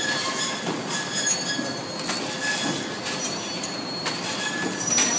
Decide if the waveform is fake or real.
real